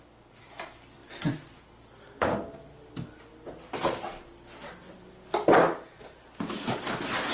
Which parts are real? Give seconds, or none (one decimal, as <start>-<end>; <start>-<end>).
0.0-7.3